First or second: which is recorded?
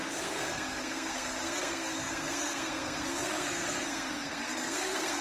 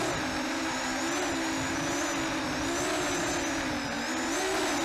second